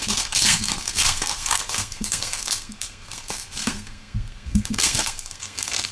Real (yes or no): no